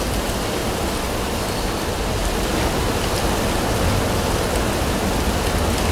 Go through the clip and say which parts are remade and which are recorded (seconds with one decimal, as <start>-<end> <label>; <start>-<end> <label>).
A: 0.0-0.6 recorded; 0.6-2.2 remade; 2.2-2.8 recorded; 2.8-4.0 remade; 4.0-5.9 recorded